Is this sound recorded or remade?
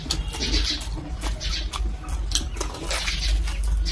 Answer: recorded